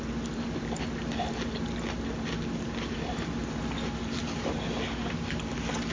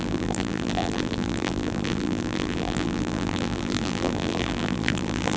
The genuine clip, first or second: first